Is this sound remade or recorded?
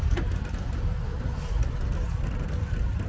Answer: remade